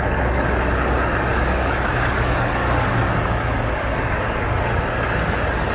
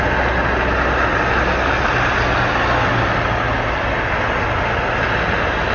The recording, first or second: second